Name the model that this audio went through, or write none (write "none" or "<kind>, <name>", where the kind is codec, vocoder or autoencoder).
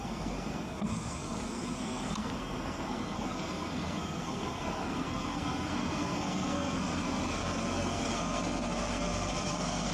codec, SNAC